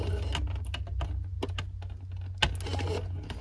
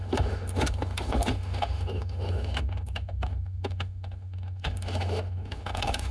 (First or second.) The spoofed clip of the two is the second